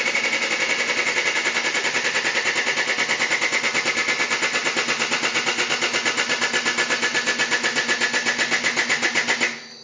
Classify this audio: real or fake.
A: real